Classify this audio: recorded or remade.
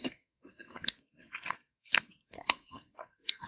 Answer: remade